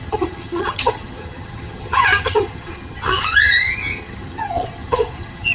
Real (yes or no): no